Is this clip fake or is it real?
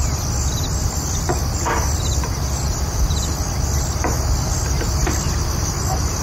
real